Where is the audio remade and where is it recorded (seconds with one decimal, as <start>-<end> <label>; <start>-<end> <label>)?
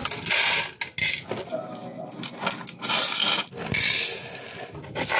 0.0-5.2 recorded